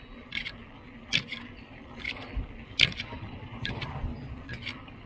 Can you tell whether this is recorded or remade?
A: recorded